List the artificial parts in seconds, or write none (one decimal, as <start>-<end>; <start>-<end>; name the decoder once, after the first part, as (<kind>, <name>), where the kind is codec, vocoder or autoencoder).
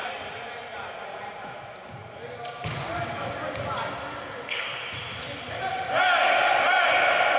none